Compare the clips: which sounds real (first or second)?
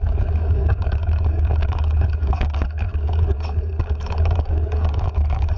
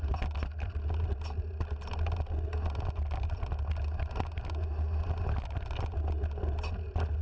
second